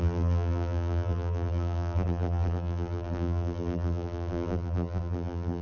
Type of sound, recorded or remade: remade